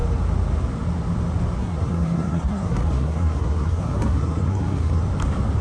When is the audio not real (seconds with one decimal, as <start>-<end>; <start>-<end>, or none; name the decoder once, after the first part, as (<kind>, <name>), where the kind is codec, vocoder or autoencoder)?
1.6-5.0 (codec, SNAC)